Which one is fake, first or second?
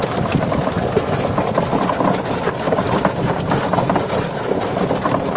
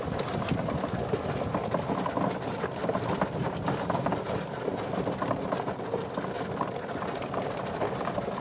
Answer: first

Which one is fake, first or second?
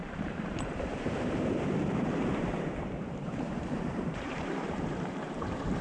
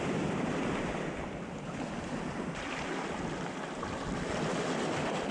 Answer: first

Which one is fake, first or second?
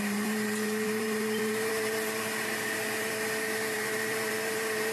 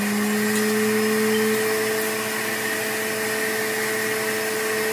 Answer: first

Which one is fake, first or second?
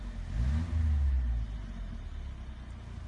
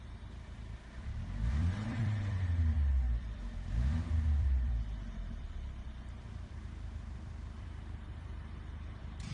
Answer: second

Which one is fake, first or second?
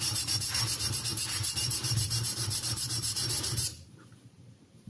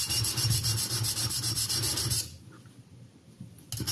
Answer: first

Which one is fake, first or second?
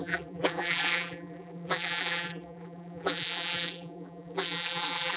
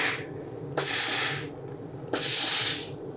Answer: first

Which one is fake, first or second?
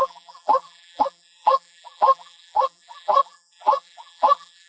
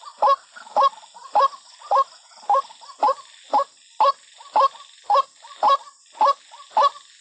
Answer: first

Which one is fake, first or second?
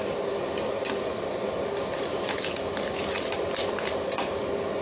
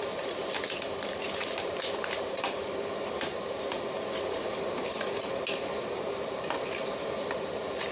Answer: second